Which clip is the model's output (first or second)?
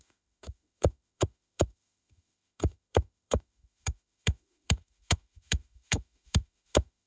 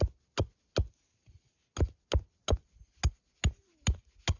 first